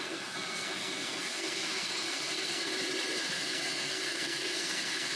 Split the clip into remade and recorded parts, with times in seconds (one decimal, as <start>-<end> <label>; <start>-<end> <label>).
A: 0.0-2.7 remade; 2.7-3.2 recorded; 3.2-5.2 remade